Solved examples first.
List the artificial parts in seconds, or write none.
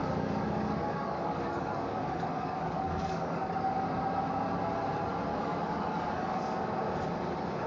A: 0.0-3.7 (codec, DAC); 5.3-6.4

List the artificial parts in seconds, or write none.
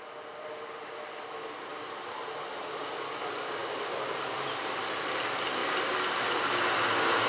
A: none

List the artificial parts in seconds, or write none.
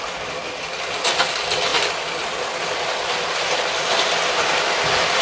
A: none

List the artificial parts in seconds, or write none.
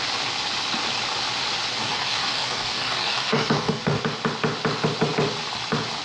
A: 1.8-4.0 (codec, DAC)